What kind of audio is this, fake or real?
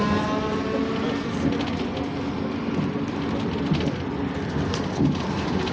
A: real